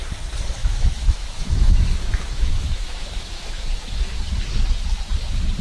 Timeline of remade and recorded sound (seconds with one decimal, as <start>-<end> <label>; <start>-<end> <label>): 0.0-0.6 recorded; 0.6-4.0 remade; 4.0-5.6 recorded